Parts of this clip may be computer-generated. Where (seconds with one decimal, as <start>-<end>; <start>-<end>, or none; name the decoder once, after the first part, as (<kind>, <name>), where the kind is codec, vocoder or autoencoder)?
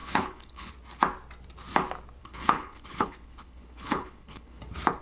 0.0-0.7 (codec, HILCodec); 2.2-4.6